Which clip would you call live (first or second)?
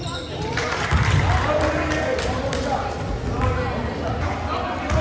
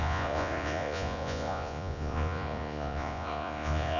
first